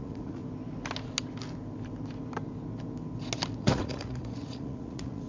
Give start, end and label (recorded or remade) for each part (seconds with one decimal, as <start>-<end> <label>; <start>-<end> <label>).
0.0-0.4 remade; 0.4-3.6 recorded; 3.6-5.3 remade